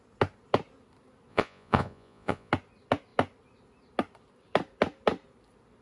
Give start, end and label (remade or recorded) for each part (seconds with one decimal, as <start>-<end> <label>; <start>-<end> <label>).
0.0-1.3 recorded; 1.3-2.5 remade; 2.5-5.8 recorded